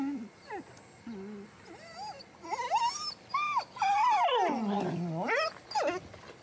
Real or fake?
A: real